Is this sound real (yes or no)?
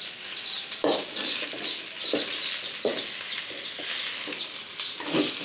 yes